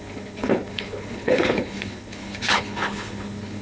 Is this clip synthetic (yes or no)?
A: yes